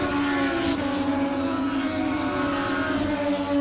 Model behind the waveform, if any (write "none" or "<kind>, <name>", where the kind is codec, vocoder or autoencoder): none